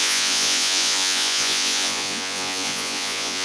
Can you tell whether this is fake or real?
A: fake